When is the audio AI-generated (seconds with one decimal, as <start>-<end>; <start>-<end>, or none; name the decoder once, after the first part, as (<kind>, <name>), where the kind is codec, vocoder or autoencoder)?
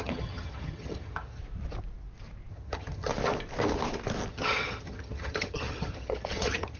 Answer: 0.0-1.4 (vocoder, HiFi-GAN); 2.5-3.1; 4.3-6.8